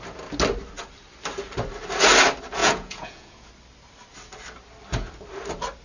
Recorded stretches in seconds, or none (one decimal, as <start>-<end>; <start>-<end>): 0.0-2.6; 3.5-5.8